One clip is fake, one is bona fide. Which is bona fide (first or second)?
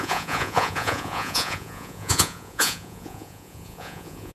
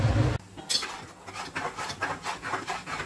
second